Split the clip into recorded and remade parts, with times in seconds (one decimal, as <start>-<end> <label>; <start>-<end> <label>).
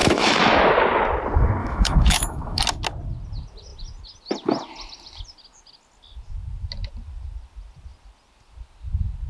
0.0-0.6 remade; 0.6-1.6 recorded; 1.6-2.6 remade; 2.6-9.3 recorded